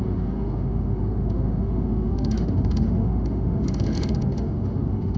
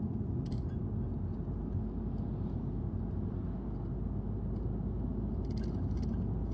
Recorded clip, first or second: second